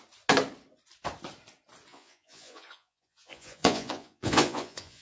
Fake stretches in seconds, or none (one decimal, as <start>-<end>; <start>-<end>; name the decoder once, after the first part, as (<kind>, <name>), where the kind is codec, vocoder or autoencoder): 1.9-5.0 (vocoder, Vocos)